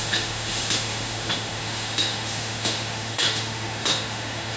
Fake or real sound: fake